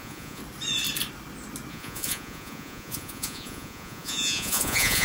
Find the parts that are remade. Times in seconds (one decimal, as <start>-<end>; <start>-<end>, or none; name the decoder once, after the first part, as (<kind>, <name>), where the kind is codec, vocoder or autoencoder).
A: 0.0-0.4 (vocoder, Vocos); 1.7-5.0